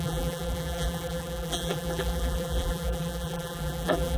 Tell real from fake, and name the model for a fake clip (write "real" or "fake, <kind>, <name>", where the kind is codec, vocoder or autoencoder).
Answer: fake, vocoder, BigVGAN v2